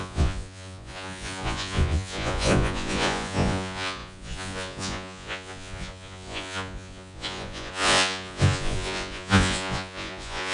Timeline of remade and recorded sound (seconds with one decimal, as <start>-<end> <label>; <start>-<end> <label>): 0.0-10.5 remade